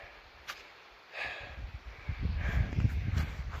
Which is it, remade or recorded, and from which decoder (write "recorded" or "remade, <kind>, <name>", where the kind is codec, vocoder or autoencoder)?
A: recorded